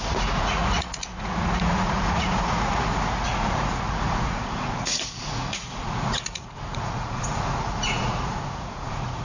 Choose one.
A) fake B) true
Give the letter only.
A